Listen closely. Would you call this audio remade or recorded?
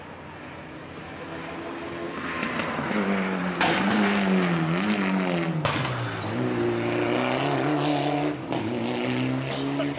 recorded